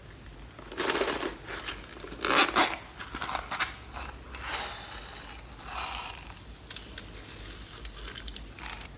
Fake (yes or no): no